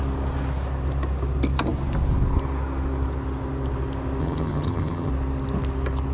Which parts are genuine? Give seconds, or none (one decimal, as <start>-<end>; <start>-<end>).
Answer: 0.0-4.2; 5.1-6.1